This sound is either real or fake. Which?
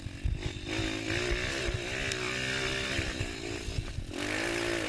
real